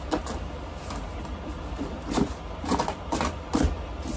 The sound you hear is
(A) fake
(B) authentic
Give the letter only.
B